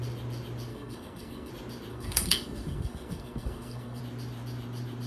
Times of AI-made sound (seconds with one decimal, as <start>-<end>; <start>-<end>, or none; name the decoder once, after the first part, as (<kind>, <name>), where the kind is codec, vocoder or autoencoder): 0.7-1.5 (codec, SNAC); 1.9-4.0